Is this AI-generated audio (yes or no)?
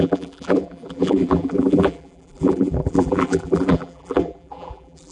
yes